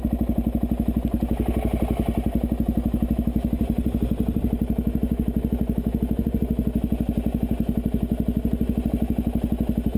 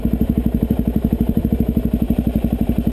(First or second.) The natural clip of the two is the first